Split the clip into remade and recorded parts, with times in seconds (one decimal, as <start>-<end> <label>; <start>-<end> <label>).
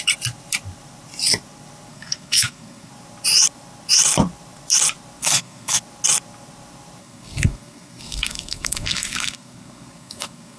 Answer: 0.0-1.9 recorded; 1.9-2.9 remade; 2.9-5.2 recorded; 5.2-5.8 remade; 5.8-7.0 recorded; 7.0-10.6 remade